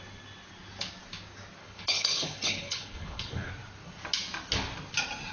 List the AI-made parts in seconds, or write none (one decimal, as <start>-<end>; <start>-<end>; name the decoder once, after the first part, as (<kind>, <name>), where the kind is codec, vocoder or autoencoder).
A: 1.6-3.5 (codec, HILCodec)